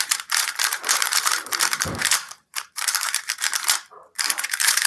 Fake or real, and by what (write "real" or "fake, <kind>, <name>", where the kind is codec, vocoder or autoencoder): fake, vocoder, BigVGAN v2